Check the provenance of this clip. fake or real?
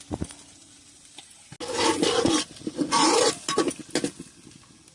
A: real